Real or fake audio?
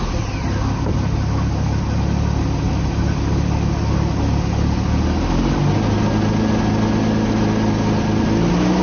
real